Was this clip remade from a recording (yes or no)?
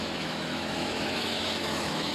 yes